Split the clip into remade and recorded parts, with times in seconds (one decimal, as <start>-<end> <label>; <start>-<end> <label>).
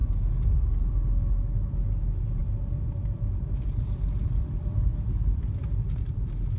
0.0-2.4 recorded; 2.4-6.6 remade